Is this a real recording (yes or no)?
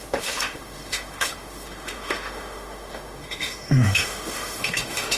no